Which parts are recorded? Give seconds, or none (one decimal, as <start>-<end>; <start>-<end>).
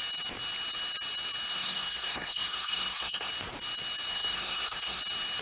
0.0-1.5; 3.3-4.1; 5.0-5.4